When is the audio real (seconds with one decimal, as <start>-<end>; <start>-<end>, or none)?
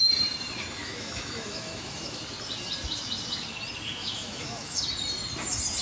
0.0-0.8; 2.2-4.0; 4.8-5.8